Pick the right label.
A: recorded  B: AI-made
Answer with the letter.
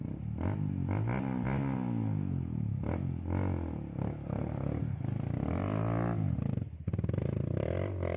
A